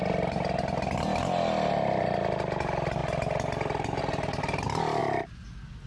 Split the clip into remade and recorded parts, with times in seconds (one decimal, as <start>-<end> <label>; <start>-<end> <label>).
0.0-5.9 recorded